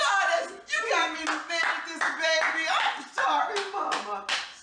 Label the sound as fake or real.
real